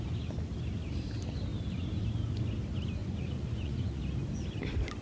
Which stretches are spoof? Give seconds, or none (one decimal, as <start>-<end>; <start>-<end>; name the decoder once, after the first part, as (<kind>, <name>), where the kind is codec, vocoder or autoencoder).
3.0-4.0 (vocoder, Vocos)